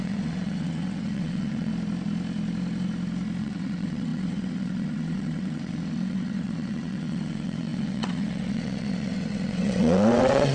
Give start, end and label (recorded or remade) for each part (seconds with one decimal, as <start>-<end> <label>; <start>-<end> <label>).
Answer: 0.0-1.7 remade; 1.7-3.4 recorded; 3.4-10.5 remade